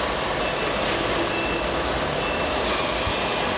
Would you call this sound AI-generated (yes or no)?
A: no